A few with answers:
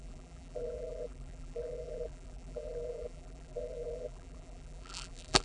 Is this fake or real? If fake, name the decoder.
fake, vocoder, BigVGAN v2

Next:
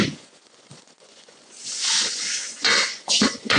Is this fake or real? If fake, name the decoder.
fake, vocoder, Vocos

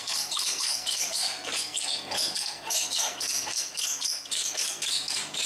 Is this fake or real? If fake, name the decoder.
fake, codec, SNAC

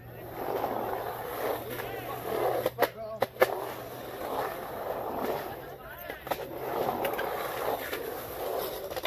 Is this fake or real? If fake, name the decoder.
real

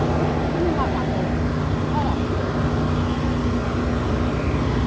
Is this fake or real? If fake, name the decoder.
real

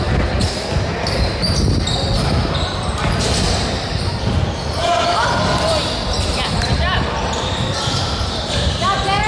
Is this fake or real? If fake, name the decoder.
real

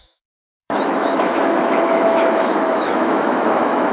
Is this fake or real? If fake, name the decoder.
fake, autoencoder, DAC-VAE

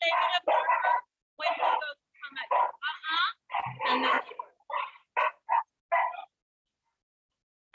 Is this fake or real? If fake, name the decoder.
real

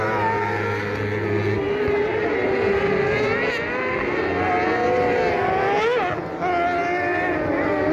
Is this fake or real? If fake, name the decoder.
real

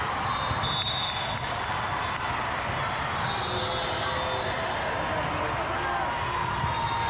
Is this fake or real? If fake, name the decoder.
real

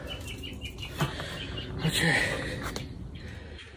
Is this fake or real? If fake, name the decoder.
real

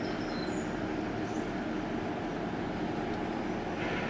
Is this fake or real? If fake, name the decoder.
real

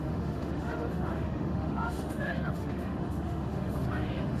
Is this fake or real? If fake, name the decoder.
fake, autoencoder, DAC-VAE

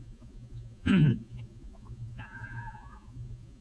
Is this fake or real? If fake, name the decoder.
fake, vocoder, Vocos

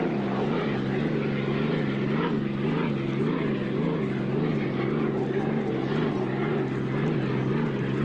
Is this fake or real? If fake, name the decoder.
real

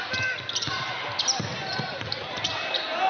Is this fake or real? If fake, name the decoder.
real